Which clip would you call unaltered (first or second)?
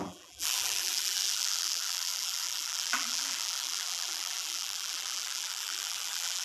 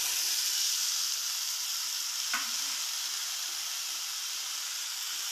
second